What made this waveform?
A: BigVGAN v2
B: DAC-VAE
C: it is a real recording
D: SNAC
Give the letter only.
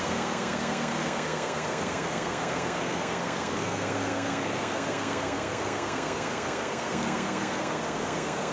D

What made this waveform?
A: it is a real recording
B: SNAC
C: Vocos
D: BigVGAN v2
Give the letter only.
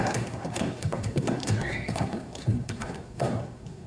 B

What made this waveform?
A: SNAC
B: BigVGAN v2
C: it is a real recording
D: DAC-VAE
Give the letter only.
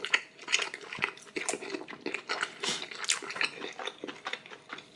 C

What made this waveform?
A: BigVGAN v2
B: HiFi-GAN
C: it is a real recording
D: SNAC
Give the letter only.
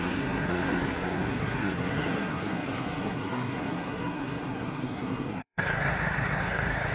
D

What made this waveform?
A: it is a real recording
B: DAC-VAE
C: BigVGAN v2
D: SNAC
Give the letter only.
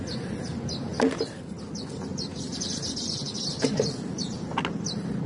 A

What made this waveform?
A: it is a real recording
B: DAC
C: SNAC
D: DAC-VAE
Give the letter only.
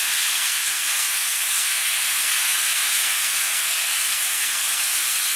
C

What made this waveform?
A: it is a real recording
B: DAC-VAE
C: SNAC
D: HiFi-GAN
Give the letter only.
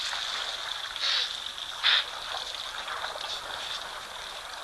A